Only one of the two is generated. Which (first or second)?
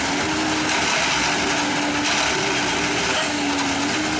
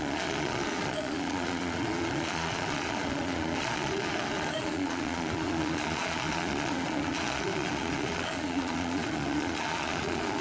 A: second